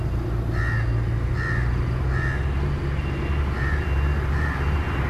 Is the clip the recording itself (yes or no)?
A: yes